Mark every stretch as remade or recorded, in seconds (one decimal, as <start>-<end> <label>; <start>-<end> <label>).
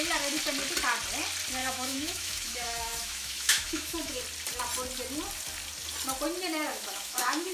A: 0.0-1.6 recorded; 1.6-4.2 remade; 4.2-6.7 recorded; 6.7-7.5 remade